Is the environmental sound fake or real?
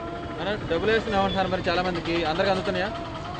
real